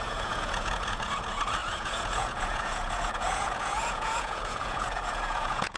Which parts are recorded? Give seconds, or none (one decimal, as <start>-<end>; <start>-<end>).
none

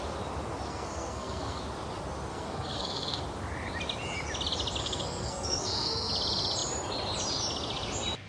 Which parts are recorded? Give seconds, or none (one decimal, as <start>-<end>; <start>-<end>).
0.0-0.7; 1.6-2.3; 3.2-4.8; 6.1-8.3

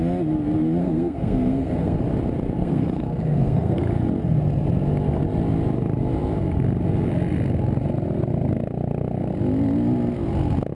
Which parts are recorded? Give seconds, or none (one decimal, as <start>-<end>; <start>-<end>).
0.0-0.8; 2.0-2.6; 3.8-10.7

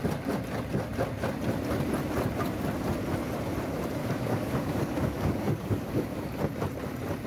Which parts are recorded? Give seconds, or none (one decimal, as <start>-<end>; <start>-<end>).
0.0-4.0; 6.4-7.3